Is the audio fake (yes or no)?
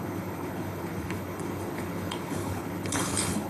yes